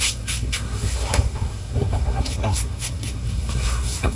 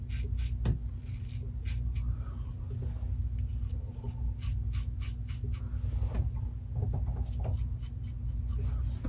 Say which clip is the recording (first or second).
second